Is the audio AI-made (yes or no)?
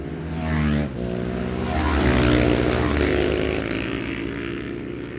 no